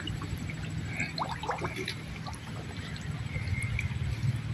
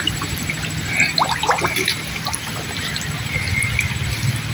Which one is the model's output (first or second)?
second